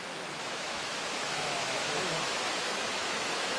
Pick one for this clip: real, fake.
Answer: fake